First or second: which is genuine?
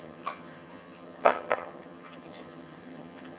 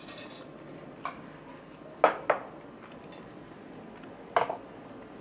second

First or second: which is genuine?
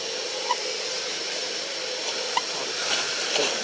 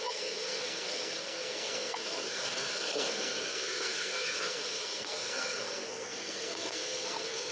first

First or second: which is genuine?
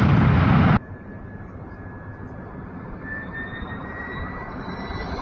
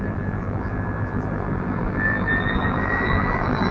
first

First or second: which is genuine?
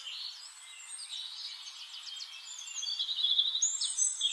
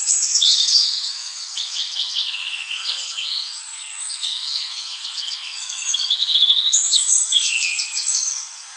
first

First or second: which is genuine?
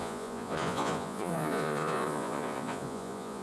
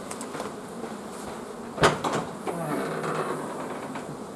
second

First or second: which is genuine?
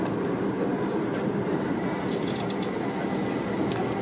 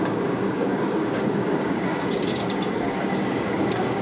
first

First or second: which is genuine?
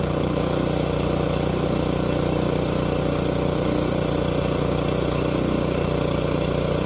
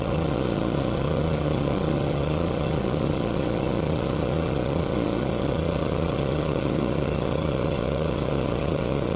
first